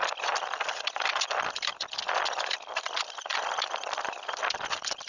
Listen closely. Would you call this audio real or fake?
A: fake